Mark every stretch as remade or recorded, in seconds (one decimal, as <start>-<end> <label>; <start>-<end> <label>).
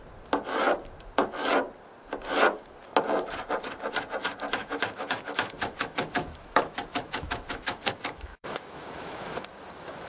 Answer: 0.0-4.6 recorded; 4.6-9.4 remade; 9.4-10.1 recorded